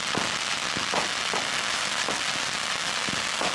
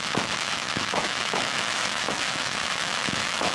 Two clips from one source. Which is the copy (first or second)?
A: second